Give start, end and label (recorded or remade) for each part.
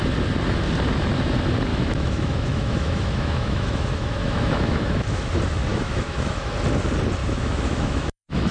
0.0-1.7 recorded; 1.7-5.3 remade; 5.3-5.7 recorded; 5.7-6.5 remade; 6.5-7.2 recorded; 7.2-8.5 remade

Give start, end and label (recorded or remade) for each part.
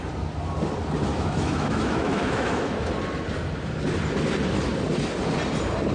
0.0-1.1 recorded; 1.1-2.9 remade; 2.9-5.9 recorded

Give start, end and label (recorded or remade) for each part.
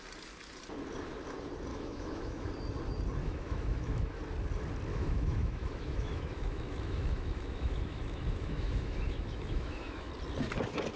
0.0-1.7 recorded; 1.7-2.5 remade; 2.5-3.2 recorded; 3.2-4.2 remade; 4.2-4.9 recorded; 4.9-10.1 remade; 10.1-11.0 recorded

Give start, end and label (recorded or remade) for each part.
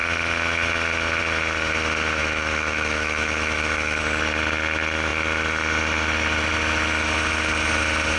0.0-2.2 recorded; 2.2-4.0 remade; 4.0-8.2 recorded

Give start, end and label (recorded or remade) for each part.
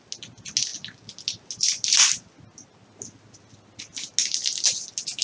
0.0-5.2 recorded